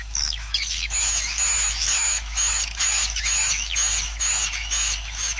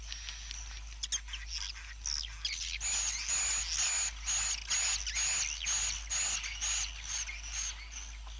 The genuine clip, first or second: second